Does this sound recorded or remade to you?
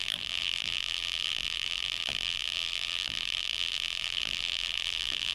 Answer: remade